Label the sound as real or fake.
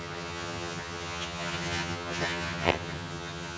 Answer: fake